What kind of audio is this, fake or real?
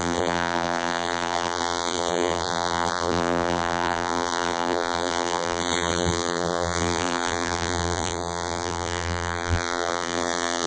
fake